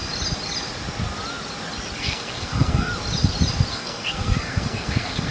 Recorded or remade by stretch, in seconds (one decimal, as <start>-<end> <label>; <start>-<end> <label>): 0.0-2.0 recorded; 2.0-2.9 remade; 2.9-3.7 recorded; 3.7-5.3 remade